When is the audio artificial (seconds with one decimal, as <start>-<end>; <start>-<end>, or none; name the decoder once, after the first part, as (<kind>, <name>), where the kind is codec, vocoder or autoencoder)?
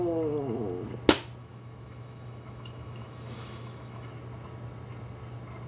1.4-4.1 (autoencoder, DAC-VAE)